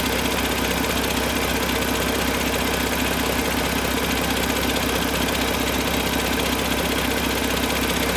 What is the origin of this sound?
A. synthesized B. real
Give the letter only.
B